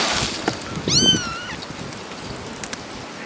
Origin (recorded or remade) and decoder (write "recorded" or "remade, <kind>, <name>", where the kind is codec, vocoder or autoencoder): recorded